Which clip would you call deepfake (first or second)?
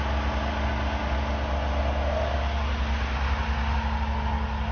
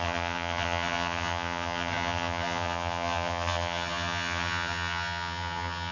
second